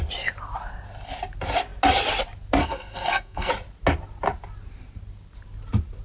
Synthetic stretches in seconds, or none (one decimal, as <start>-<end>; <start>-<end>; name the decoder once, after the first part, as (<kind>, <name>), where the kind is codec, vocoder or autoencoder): 2.6-3.5 (codec, SNAC)